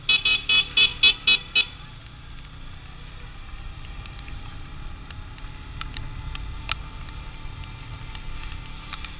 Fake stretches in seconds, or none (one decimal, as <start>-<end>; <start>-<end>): none